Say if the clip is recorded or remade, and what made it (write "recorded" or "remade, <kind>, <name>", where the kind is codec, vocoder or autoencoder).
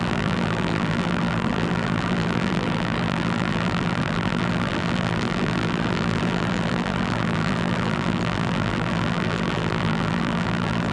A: remade, vocoder, BigVGAN v2